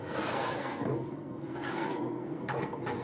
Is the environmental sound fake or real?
fake